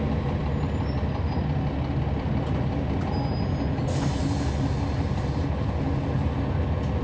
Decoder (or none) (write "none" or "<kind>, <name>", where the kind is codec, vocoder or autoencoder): none